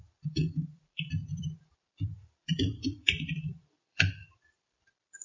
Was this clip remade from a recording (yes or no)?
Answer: yes